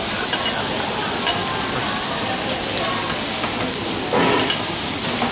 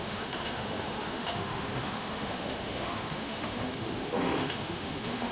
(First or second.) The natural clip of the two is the first